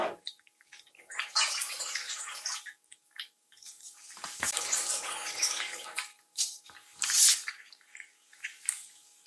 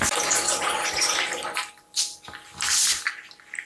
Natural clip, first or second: second